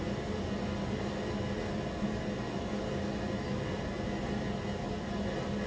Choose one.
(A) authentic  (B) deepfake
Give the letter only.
A